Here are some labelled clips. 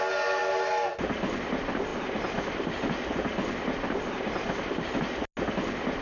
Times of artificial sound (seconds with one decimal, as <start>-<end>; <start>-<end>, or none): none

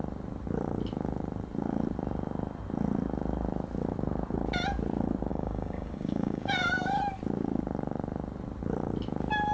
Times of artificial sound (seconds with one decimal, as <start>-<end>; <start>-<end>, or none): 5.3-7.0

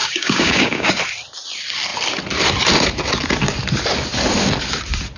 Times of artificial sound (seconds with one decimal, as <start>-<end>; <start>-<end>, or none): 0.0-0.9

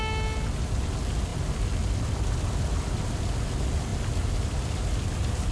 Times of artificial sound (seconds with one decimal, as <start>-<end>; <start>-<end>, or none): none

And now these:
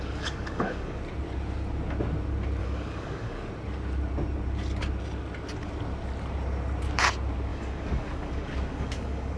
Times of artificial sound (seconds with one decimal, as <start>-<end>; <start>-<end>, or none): 0.0-1.0; 2.6-3.5; 7.5-9.4

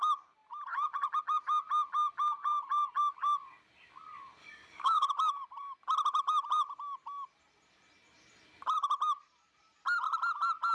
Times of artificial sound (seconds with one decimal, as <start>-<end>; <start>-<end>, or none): 4.4-5.1